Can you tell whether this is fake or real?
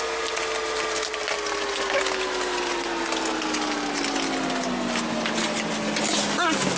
real